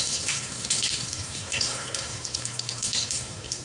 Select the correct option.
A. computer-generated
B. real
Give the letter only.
A